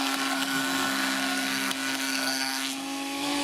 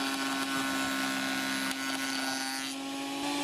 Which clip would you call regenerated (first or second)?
first